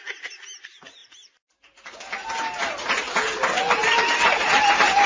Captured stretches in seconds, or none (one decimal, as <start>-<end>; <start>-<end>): 0.0-5.1